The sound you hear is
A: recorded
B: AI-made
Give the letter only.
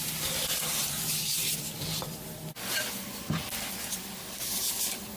B